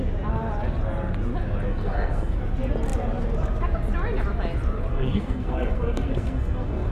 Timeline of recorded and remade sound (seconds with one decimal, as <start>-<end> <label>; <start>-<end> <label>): 0.0-1.7 recorded; 1.7-2.4 remade; 2.4-4.9 recorded; 4.9-6.9 remade

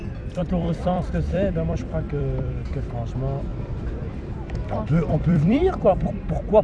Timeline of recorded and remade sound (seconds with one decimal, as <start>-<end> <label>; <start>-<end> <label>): 0.0-0.4 recorded; 0.4-2.6 remade; 2.6-3.5 recorded; 3.5-6.6 remade

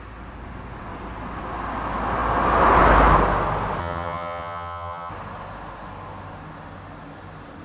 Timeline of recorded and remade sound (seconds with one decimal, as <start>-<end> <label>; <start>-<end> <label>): 0.0-3.8 recorded; 3.8-5.1 remade; 5.1-7.6 recorded

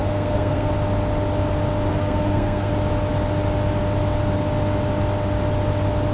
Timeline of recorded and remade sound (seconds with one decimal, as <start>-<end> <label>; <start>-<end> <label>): 0.0-0.7 remade; 0.7-1.9 recorded; 1.9-2.7 remade; 2.7-6.1 recorded

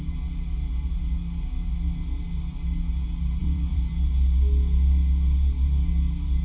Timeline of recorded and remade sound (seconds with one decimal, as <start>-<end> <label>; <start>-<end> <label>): 0.0-3.4 recorded; 3.4-3.9 remade; 3.9-6.4 recorded

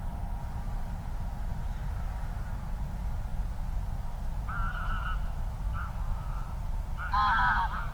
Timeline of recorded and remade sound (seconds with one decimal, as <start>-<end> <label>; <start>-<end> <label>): 0.0-7.9 recorded

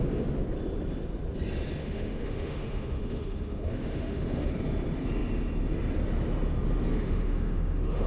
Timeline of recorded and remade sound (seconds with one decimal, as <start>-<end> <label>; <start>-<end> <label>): 0.0-1.8 recorded; 1.8-4.5 remade; 4.5-6.9 recorded; 6.9-8.1 remade